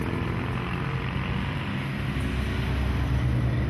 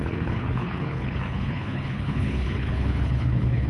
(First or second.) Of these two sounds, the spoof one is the second